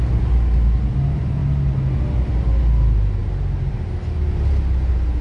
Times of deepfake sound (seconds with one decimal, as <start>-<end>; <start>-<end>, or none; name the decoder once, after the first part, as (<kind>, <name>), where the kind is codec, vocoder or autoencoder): none